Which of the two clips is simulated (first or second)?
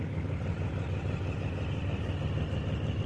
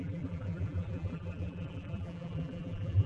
second